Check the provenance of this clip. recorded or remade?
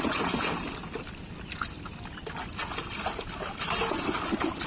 recorded